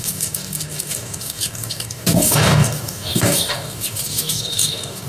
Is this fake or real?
fake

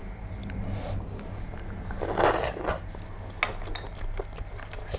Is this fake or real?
real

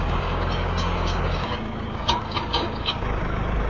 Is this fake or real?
fake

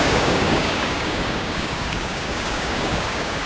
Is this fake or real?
fake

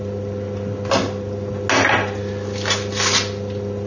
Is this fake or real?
real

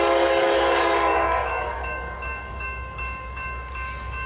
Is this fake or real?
fake